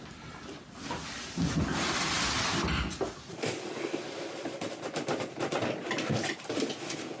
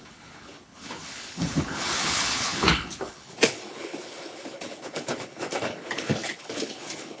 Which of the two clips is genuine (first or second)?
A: first